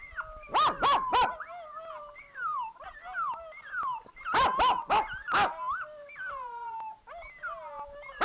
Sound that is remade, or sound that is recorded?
recorded